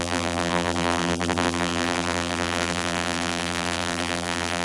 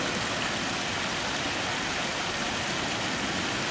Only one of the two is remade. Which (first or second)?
first